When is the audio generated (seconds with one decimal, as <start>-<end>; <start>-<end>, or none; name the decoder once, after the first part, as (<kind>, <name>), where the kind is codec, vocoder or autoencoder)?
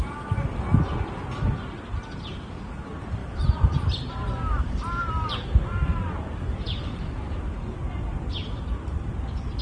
3.2-7.4 (vocoder, BigVGAN v2); 8.4-9.1